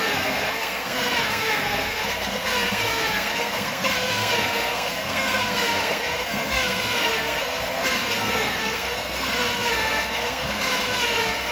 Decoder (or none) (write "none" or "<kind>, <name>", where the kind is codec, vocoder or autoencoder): codec, SNAC